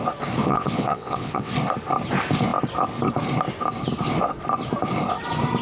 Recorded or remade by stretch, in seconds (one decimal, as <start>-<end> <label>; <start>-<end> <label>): 0.0-0.4 recorded; 0.4-1.5 remade; 1.5-5.6 recorded